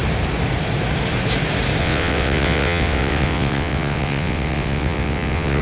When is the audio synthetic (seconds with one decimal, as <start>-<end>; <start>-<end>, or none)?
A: 1.8-5.6